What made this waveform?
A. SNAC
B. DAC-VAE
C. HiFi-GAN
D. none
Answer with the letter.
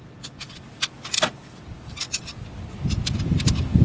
D